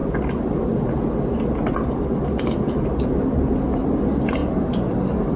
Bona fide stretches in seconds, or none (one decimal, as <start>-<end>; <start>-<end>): 0.0-5.4